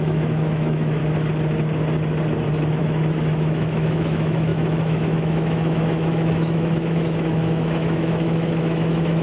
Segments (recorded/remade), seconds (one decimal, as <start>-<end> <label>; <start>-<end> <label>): 0.0-1.0 remade; 1.0-2.8 recorded; 2.8-9.2 remade